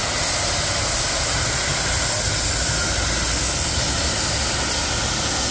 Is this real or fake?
real